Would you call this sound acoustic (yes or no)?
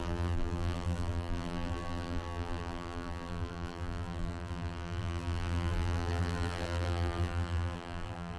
no